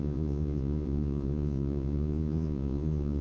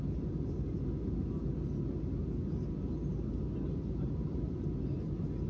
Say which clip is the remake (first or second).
first